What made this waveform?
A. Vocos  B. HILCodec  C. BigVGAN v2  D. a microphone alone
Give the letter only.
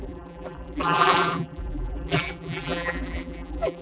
C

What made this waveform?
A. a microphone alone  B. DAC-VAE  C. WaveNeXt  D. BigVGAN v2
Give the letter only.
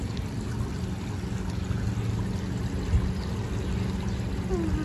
A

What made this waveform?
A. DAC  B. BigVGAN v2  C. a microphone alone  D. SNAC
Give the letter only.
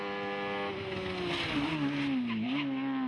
C